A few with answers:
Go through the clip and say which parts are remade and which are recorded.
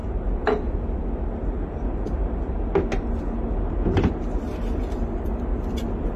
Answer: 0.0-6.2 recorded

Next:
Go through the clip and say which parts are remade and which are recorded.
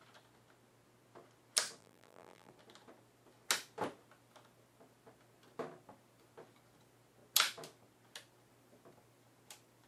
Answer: 0.0-1.8 recorded; 1.8-2.5 remade; 2.5-9.9 recorded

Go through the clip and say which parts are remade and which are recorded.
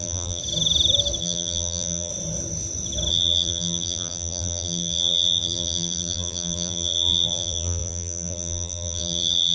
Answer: 0.0-0.4 remade; 0.4-1.2 recorded; 1.2-2.1 remade; 2.1-3.1 recorded; 3.1-9.5 remade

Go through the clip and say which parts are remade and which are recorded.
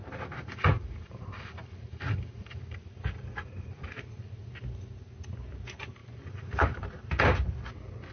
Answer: 0.0-4.1 remade; 4.1-6.0 recorded; 6.0-6.8 remade; 6.8-8.1 recorded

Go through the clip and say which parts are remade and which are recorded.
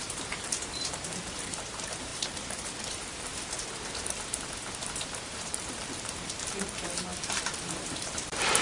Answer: 0.0-3.3 remade; 3.3-5.2 recorded; 5.2-8.6 remade